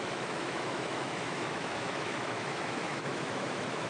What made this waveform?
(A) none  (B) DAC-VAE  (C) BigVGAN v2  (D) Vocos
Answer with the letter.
B